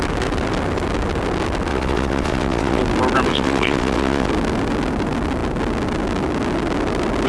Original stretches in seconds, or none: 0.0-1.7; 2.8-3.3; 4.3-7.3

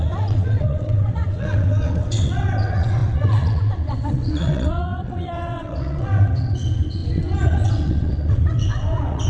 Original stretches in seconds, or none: none

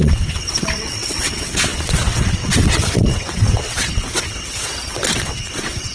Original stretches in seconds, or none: none